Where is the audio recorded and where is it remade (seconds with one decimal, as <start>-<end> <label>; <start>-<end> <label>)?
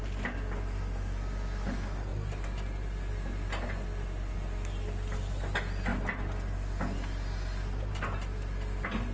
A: 0.0-9.1 recorded